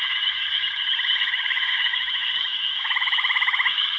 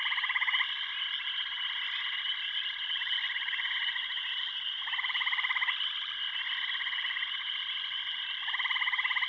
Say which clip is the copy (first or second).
first